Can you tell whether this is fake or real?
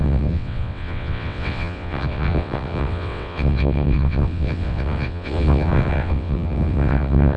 fake